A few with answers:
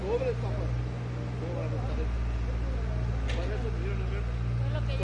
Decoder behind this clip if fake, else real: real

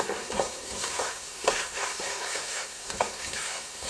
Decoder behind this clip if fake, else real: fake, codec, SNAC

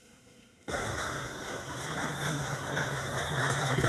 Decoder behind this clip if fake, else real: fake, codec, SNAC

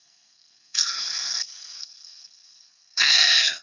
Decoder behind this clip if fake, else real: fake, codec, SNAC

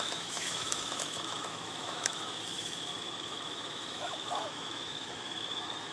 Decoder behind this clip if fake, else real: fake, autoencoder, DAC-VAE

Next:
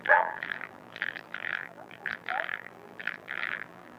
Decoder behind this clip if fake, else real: fake, vocoder, BigVGAN v2